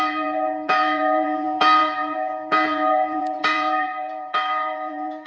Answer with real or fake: fake